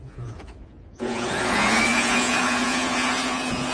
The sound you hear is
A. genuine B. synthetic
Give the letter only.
B